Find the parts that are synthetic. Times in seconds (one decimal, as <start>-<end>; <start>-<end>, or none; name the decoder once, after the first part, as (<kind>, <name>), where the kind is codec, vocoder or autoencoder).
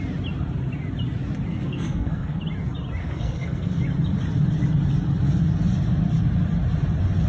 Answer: 1.5-2.4 (codec, SNAC); 3.0-3.8